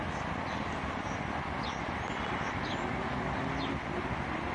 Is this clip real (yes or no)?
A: yes